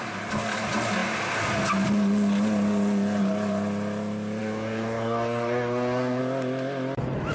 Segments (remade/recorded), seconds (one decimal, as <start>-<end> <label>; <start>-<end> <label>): 0.0-4.4 recorded; 4.4-6.2 remade; 6.2-7.3 recorded